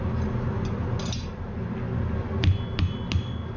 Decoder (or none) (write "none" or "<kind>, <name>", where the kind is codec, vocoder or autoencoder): none